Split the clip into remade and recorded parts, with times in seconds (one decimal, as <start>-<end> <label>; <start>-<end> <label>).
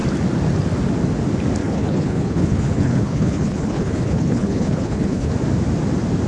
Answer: 0.0-1.6 recorded; 1.6-5.3 remade; 5.3-6.3 recorded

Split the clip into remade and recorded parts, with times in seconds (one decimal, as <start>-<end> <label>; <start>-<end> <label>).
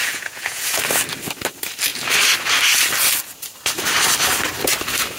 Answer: 0.0-0.8 remade; 0.8-5.2 recorded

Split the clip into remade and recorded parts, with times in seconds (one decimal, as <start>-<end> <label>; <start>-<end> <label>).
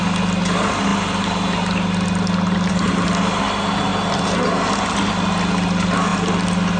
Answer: 0.0-6.8 recorded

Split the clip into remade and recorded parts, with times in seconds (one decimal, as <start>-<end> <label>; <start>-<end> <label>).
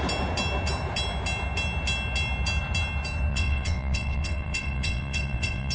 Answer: 0.0-3.3 recorded; 3.3-5.7 remade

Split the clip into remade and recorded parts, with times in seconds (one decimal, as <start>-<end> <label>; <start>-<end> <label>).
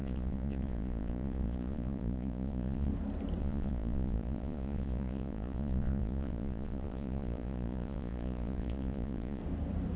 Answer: 0.0-2.9 remade; 2.9-3.4 recorded; 3.4-9.4 remade; 9.4-10.0 recorded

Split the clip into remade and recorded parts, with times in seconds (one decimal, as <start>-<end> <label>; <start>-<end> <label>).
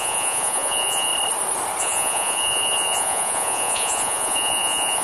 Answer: 0.0-1.1 remade; 1.1-1.8 recorded; 1.8-5.0 remade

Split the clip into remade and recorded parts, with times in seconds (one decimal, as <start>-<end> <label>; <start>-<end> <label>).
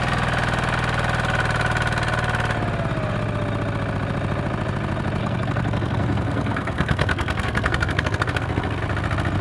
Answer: 0.0-5.2 recorded; 5.2-8.8 remade; 8.8-9.4 recorded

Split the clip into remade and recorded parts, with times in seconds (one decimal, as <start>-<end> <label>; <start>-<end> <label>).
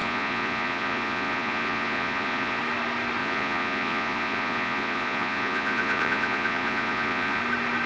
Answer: 0.0-2.6 remade; 2.6-3.2 recorded; 3.2-7.4 remade; 7.4-7.9 recorded